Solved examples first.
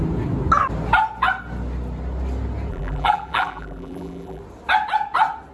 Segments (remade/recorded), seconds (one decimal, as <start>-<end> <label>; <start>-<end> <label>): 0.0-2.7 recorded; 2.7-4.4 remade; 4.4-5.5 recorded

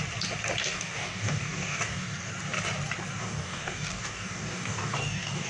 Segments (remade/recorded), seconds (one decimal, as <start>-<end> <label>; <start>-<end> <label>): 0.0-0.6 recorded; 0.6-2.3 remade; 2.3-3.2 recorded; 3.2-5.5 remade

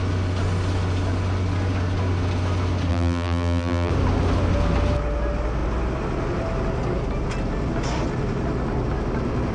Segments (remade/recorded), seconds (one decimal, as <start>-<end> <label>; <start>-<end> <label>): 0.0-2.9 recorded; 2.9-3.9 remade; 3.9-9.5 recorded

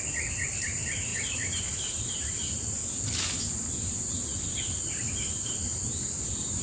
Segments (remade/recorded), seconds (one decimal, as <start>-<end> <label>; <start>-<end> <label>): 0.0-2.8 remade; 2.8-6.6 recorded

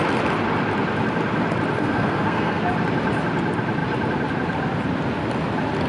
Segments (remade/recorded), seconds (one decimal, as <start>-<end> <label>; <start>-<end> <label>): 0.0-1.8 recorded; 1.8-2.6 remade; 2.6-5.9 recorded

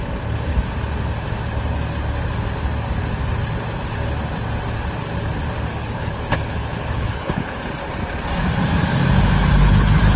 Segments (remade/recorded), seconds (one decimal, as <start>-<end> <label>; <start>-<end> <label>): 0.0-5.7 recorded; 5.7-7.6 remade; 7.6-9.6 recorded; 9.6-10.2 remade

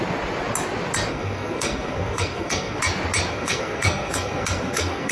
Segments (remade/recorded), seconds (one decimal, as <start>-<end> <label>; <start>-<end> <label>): 0.0-1.1 recorded; 1.1-2.8 remade; 2.8-3.3 recorded; 3.3-5.1 remade